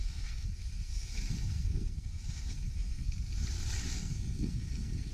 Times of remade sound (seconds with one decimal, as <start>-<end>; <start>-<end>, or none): 0.0-3.1; 4.0-5.1

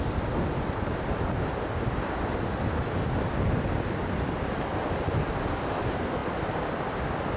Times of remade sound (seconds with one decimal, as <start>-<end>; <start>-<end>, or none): none

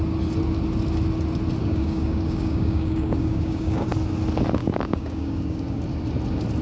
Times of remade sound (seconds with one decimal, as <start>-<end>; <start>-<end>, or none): 1.6-3.9; 4.6-5.8

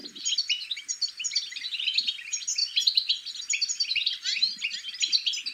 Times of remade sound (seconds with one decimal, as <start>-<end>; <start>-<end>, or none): none